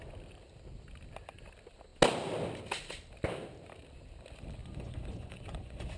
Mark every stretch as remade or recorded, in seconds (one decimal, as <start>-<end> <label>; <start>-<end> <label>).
0.0-4.6 recorded; 4.6-6.0 remade